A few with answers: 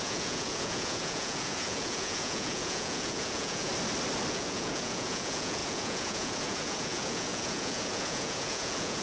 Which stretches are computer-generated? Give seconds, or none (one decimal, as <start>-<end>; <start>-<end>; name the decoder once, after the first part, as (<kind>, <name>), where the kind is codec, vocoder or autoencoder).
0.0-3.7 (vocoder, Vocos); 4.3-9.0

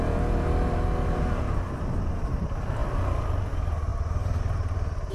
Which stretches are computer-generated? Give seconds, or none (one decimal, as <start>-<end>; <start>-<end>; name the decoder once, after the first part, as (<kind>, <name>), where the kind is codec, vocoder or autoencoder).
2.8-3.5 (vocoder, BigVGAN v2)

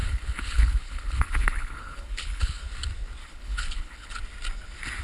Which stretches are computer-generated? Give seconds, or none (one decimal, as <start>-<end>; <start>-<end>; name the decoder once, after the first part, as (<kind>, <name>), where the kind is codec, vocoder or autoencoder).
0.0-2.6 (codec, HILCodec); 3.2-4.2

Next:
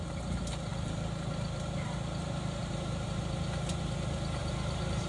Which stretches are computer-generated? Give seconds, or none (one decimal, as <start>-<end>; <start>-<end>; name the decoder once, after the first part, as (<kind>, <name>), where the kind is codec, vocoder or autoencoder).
0.7-3.8 (vocoder, BigVGAN v2); 4.4-5.1